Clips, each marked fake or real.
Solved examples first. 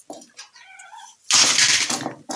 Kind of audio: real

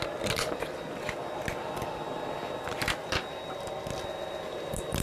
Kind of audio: real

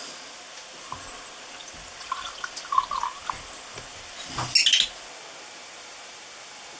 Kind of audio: real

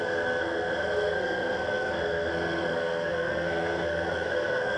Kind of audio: fake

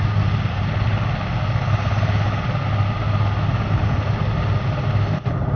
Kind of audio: real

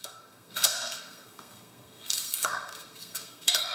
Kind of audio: fake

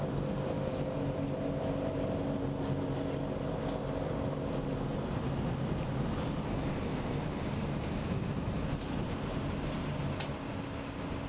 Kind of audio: real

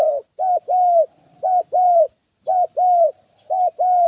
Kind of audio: real